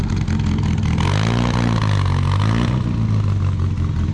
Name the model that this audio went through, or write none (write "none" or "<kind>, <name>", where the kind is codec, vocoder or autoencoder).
none